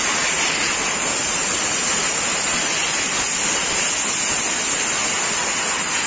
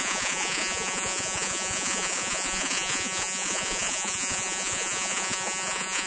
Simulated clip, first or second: second